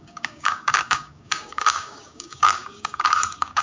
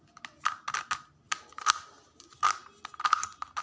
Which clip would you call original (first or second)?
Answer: second